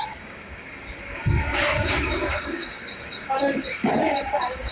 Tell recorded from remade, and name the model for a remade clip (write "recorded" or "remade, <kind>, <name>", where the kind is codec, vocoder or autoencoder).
remade, codec, DAC